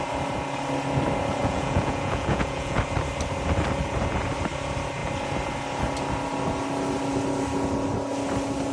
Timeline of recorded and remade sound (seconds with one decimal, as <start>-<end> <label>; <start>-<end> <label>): 0.0-1.4 recorded; 1.4-2.8 remade; 2.8-8.7 recorded